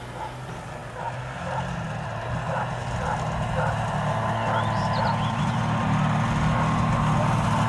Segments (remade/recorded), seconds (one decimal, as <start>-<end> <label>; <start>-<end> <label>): 0.0-7.7 recorded